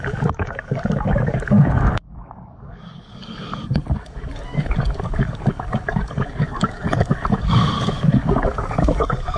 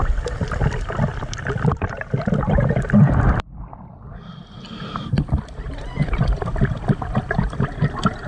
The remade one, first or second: first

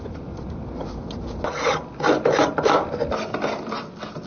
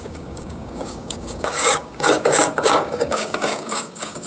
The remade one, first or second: second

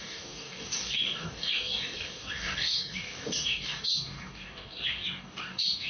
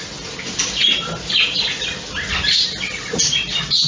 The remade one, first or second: first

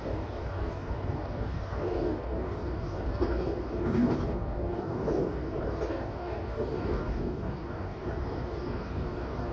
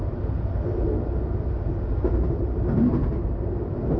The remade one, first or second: first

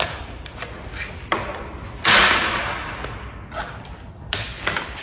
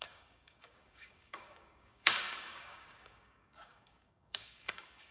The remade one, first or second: second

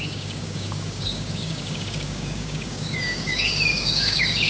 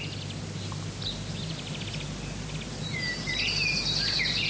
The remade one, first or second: first